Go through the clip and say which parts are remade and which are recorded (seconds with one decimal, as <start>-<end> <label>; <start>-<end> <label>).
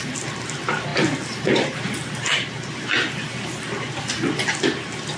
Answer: 0.0-5.2 recorded